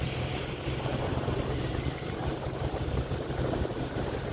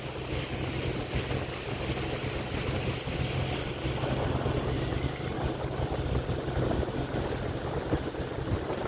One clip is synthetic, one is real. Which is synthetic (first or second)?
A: first